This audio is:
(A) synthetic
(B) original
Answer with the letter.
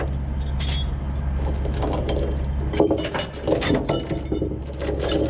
B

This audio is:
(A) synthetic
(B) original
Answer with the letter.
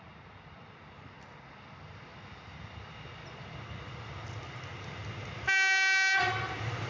B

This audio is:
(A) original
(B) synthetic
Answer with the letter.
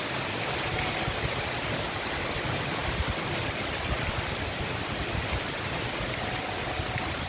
A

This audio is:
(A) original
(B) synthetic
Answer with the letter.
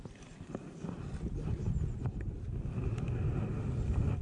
A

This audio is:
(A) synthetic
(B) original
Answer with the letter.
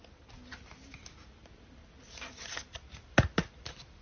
B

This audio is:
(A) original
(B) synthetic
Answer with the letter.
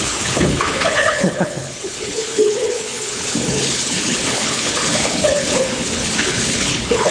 B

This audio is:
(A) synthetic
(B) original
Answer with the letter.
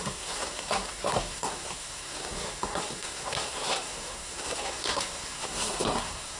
A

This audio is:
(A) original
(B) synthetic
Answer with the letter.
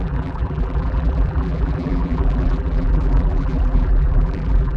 B